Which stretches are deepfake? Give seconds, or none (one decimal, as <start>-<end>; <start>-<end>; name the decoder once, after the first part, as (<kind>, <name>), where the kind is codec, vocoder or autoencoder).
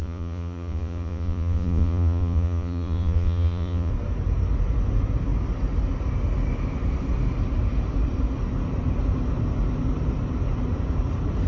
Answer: 0.0-3.9 (vocoder, Vocos)